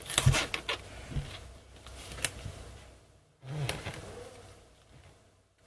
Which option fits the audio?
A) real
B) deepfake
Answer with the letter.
A